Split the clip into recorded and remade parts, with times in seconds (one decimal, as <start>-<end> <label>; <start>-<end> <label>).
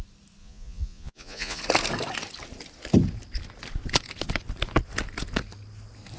0.0-0.4 recorded; 0.4-1.6 remade; 1.6-6.2 recorded